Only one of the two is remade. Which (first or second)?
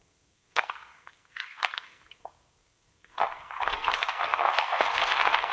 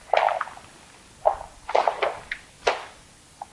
first